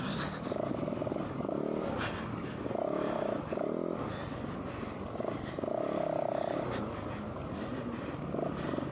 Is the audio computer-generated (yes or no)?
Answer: no